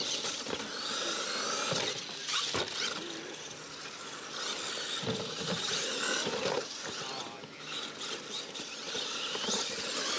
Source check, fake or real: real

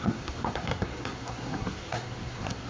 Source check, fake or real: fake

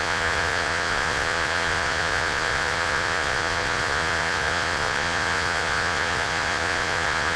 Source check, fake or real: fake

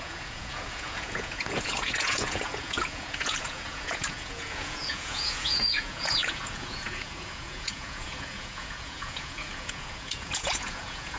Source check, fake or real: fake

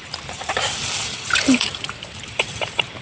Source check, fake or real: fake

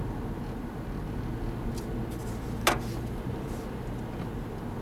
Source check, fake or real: real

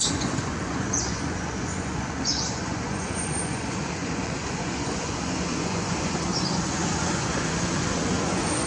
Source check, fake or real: fake